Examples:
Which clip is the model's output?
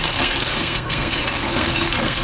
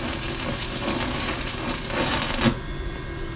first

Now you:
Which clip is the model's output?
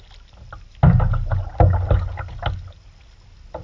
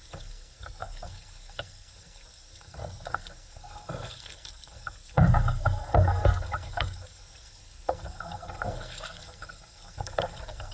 second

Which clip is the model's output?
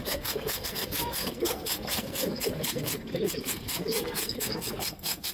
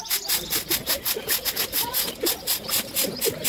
first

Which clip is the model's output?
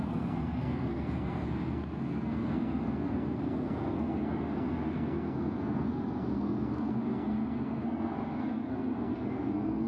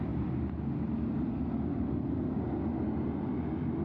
first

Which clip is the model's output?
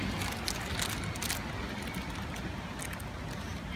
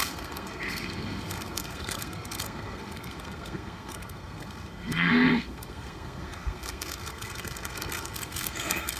second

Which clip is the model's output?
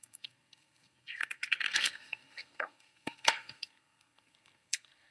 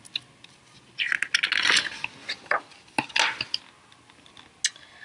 first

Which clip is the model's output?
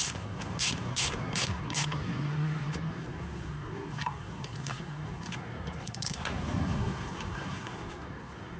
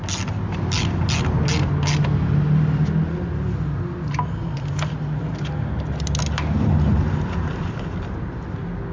first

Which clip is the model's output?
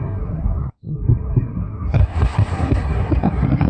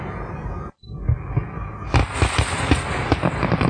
first